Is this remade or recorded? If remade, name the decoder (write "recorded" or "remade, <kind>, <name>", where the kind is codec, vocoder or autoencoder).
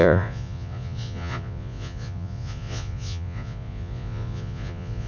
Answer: remade, vocoder, Vocos